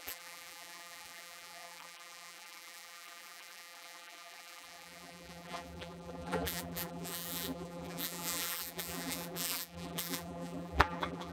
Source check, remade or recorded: remade